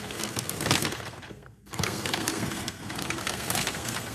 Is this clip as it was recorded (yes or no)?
no